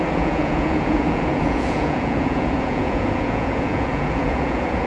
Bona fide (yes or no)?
no